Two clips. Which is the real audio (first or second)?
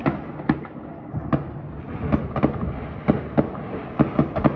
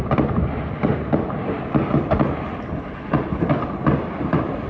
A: first